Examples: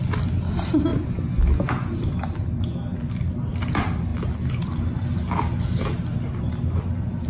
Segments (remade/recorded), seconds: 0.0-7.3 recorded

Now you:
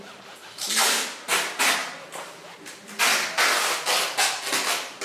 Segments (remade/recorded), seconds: 0.0-5.0 recorded

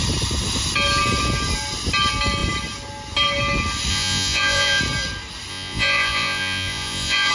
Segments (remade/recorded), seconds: 0.0-3.9 recorded; 3.9-4.8 remade; 4.8-5.5 recorded; 5.5-7.3 remade

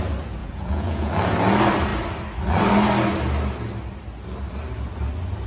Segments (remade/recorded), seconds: 0.0-0.4 recorded; 0.4-1.1 remade; 1.1-5.5 recorded

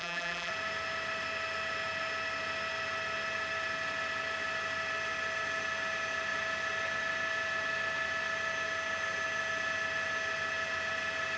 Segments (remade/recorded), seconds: 0.0-0.5 remade; 0.5-11.4 recorded

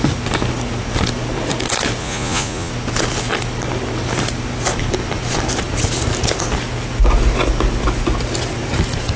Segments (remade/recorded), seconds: 0.0-2.0 recorded; 2.0-2.7 remade; 2.7-9.2 recorded

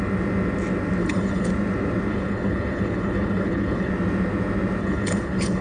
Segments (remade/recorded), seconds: 0.0-1.0 recorded; 1.0-1.5 remade; 1.5-2.1 recorded; 2.1-3.9 remade; 3.9-4.8 recorded; 4.8-5.6 remade